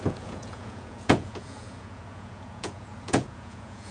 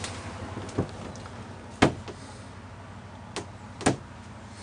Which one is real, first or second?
second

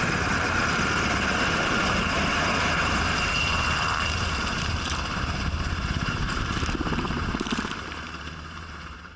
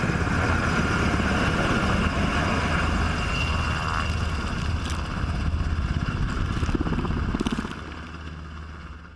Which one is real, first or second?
second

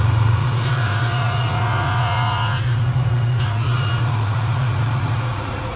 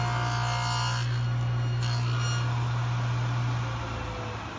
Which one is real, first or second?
second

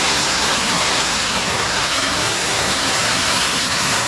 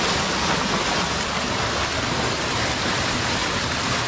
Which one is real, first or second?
second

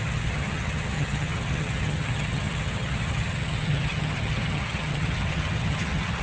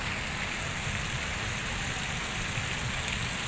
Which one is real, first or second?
second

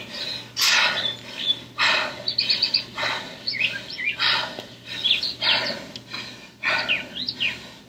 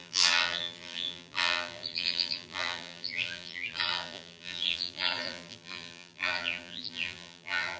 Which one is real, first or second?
first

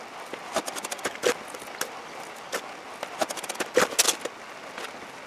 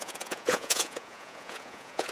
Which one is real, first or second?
first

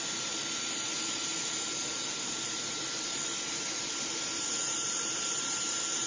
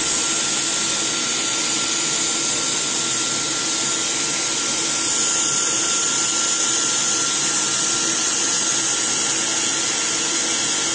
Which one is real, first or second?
second